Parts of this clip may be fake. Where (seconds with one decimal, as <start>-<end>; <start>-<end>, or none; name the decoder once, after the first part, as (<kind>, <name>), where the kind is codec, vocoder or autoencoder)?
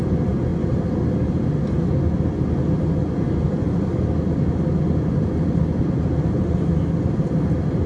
none